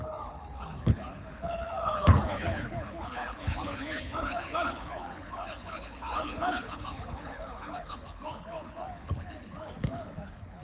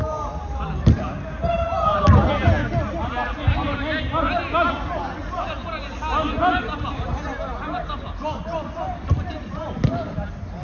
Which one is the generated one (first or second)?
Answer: first